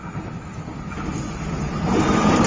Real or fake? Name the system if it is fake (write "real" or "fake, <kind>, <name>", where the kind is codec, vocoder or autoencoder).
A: real